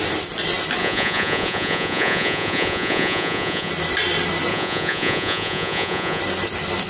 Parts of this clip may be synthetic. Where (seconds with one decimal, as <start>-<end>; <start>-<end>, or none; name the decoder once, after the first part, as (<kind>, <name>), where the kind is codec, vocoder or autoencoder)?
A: 0.8-3.7 (vocoder, Vocos); 4.5-6.2